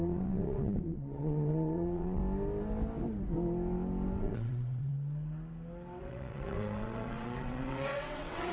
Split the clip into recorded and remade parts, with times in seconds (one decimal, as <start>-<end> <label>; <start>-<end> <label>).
0.0-2.2 remade; 2.2-4.2 recorded; 4.2-4.9 remade; 4.9-6.0 recorded; 6.0-8.5 remade